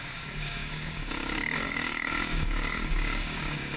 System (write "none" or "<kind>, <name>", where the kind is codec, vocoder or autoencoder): codec, DAC